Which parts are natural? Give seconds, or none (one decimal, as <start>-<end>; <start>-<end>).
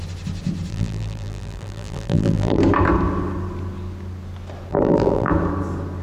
0.0-0.7; 2.6-4.7; 5.3-6.0